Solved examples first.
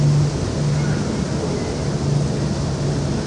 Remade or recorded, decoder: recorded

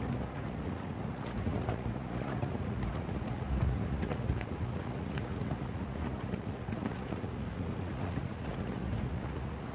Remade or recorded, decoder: remade, vocoder, Vocos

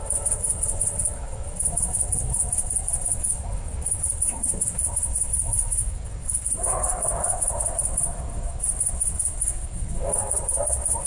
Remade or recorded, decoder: remade, codec, DAC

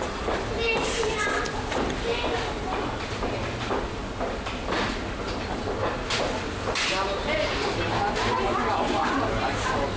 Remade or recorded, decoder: recorded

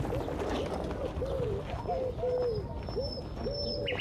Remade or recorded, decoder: recorded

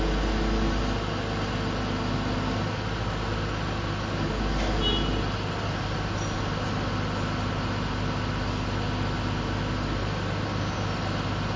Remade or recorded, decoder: recorded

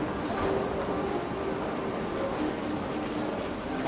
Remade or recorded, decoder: recorded